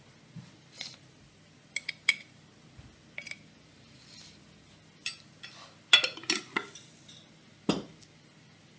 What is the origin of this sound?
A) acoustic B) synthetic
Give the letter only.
A